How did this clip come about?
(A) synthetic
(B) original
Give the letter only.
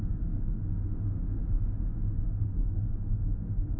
A